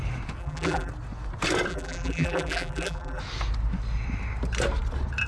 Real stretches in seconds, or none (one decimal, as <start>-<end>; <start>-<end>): 0.0-0.4; 0.9-1.7; 3.2-5.3